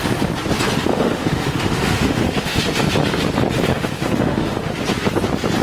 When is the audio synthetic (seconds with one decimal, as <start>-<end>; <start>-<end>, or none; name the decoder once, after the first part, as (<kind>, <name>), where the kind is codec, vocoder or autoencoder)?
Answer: 0.9-2.6 (autoencoder, DAC-VAE); 3.7-4.7